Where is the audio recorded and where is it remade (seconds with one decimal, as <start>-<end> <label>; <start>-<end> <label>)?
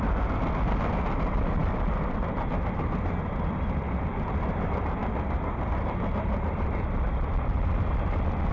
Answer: 0.0-8.5 recorded